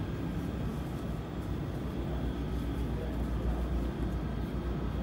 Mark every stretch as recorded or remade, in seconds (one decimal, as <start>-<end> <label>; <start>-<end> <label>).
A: 0.0-5.0 recorded